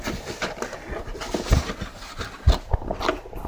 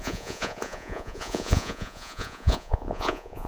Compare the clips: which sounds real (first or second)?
first